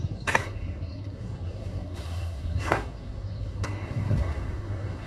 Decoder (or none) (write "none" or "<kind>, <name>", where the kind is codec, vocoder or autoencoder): codec, SNAC